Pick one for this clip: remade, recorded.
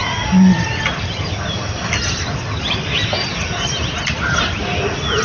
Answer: recorded